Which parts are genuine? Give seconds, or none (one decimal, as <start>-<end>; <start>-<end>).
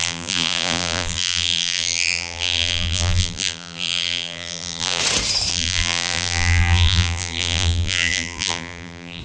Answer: 5.0-5.5